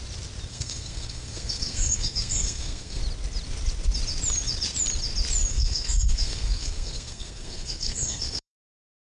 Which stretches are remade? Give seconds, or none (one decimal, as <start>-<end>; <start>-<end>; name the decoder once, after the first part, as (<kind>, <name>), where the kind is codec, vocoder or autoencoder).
0.5-3.0 (codec, SNAC); 5.5-8.6